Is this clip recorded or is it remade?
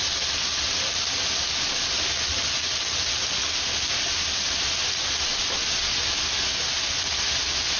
recorded